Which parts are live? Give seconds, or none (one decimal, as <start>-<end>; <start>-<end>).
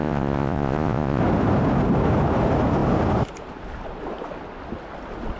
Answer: 1.2-5.4